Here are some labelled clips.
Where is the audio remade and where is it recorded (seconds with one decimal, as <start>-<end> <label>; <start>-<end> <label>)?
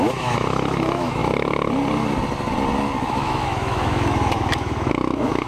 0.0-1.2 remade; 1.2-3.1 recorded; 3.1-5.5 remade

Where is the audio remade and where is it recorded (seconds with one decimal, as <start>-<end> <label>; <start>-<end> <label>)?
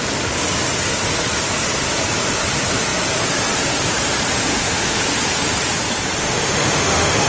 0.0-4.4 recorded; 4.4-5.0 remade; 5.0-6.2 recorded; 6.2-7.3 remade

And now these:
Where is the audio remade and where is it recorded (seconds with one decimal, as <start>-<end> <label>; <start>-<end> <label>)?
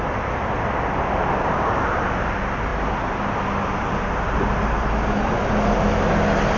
0.0-6.6 recorded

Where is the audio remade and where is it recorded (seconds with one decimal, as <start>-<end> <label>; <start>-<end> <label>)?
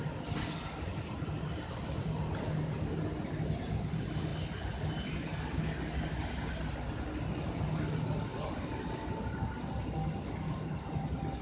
0.0-11.4 recorded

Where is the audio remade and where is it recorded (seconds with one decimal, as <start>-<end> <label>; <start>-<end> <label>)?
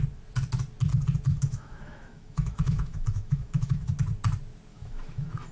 0.0-1.3 recorded; 1.3-3.9 remade; 3.9-4.7 recorded; 4.7-5.5 remade